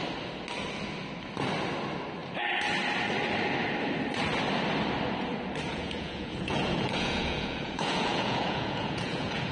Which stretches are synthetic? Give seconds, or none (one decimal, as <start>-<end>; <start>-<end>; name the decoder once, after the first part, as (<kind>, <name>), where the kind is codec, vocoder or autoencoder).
5.7-9.5 (vocoder, Vocos)